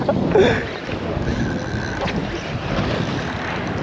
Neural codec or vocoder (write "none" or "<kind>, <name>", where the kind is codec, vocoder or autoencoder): none